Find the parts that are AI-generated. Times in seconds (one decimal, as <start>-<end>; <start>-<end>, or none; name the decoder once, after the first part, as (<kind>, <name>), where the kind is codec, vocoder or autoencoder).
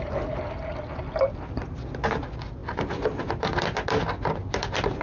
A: none